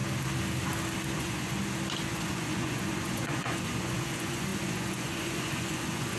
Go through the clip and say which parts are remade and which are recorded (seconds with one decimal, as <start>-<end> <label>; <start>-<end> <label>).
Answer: 0.0-1.2 recorded; 1.2-1.6 remade; 1.6-2.1 recorded; 2.1-6.2 remade